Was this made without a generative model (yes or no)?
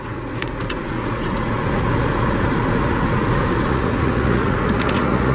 no